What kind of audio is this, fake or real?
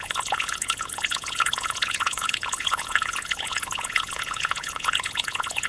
fake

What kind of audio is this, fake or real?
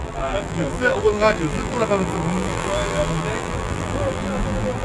fake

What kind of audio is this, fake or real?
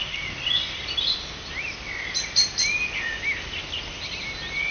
real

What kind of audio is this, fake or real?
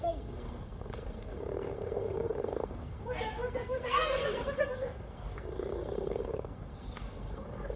fake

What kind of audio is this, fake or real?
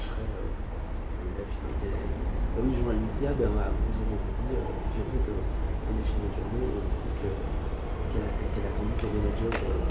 real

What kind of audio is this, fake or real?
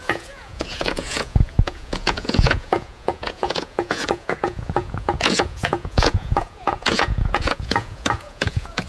fake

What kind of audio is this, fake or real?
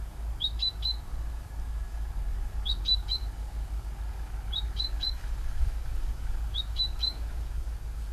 fake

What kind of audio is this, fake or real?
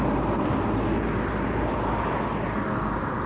real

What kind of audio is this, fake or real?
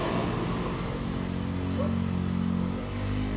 real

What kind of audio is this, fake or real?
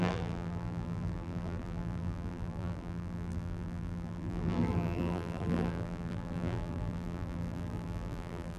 fake